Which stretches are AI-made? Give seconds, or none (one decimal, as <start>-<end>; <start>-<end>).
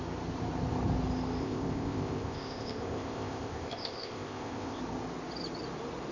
1.4-4.8